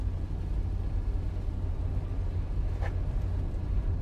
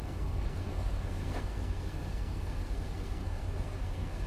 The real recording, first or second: first